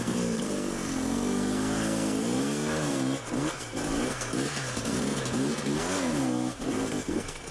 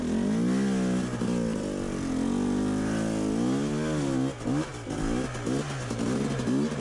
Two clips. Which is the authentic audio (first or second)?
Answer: second